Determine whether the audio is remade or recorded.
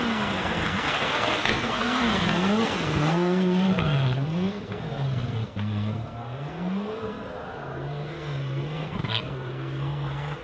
remade